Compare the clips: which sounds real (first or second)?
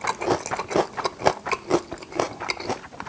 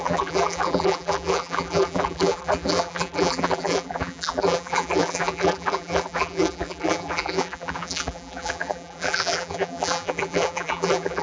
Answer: first